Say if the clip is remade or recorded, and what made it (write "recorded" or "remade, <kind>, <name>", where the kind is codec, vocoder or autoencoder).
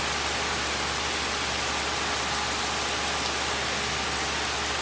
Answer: recorded